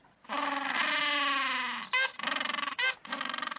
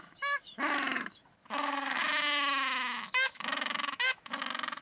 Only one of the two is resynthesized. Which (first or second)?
second